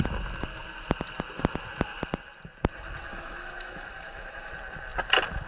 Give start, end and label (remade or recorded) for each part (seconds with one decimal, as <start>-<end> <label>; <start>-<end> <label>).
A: 0.0-3.1 recorded; 3.1-4.5 remade; 4.5-5.5 recorded